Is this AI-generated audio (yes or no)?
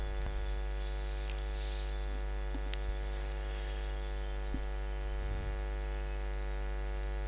no